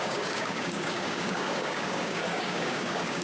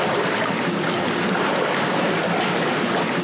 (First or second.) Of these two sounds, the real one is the second